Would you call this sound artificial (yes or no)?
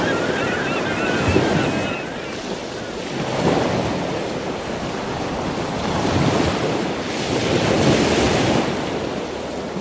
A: no